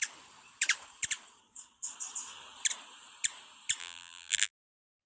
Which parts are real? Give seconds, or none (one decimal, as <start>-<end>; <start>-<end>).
0.0-3.8; 4.5-5.1